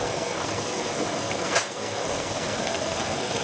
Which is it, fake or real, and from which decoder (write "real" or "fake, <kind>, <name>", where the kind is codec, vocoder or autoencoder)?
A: fake, codec, SNAC